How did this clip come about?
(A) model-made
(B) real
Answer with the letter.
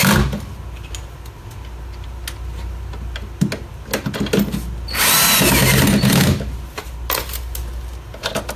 B